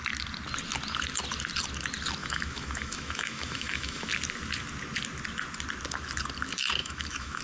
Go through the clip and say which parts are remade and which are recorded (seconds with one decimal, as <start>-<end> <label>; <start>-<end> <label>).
0.0-2.2 recorded; 2.2-4.1 remade; 4.1-6.8 recorded; 6.8-7.4 remade